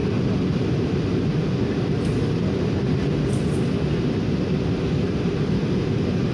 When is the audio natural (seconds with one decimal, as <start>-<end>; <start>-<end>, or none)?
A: 0.0-6.3